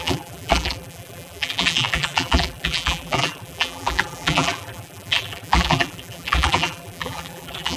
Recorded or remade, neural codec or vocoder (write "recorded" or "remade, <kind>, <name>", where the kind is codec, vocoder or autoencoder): remade, vocoder, BigVGAN v2